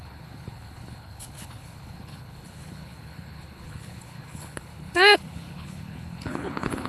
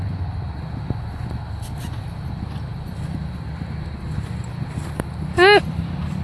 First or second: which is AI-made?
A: first